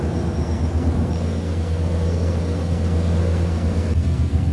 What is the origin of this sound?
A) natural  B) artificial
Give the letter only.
B